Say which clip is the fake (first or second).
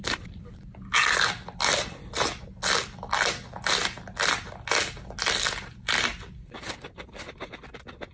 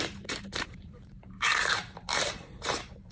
second